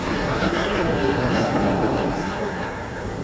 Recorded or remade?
remade